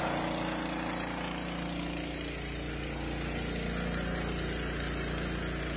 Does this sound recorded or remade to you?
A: recorded